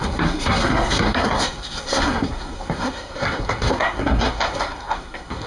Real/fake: fake